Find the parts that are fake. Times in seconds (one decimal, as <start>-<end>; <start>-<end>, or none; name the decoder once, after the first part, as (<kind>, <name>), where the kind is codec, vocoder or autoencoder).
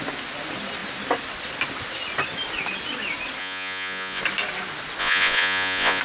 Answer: 3.4-4.2 (vocoder, Vocos); 5.0-6.0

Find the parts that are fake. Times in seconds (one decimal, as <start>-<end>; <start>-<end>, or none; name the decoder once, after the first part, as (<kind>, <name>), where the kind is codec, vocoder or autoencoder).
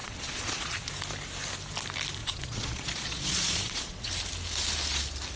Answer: 0.0-0.9 (vocoder, Vocos); 2.2-4.1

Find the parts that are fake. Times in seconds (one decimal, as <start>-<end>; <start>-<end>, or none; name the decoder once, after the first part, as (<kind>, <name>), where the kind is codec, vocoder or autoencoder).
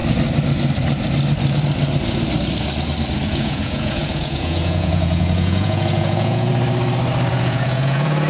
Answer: 3.3-6.5 (vocoder, Vocos); 7.3-8.3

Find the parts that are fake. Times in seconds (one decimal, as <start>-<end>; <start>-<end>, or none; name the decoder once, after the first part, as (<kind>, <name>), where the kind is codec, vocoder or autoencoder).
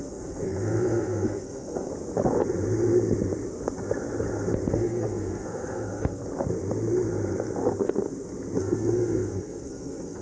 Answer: 0.0-1.9 (codec, SNAC); 4.7-6.2; 8.6-10.2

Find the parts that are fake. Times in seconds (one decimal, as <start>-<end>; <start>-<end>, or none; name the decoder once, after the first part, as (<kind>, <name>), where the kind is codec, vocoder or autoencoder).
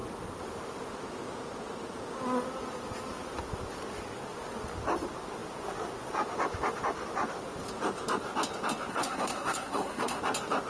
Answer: 8.9-10.2 (codec, SNAC)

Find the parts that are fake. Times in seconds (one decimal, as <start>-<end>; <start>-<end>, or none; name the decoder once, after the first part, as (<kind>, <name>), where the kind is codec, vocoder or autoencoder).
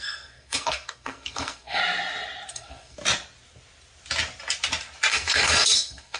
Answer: 0.0-1.8 (codec, SNAC); 2.5-3.0; 5.1-6.2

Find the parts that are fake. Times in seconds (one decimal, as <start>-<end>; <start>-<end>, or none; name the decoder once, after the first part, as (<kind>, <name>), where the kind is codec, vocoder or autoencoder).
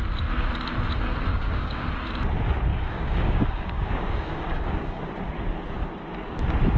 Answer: 1.3-1.9 (codec, DAC); 2.7-5.0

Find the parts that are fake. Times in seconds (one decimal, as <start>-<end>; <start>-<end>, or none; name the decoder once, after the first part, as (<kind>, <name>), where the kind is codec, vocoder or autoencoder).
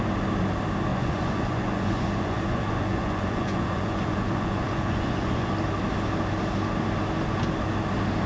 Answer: 0.9-5.5 (vocoder, Vocos)